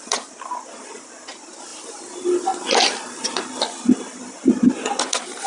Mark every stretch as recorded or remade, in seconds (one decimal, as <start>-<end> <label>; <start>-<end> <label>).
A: 0.0-5.5 recorded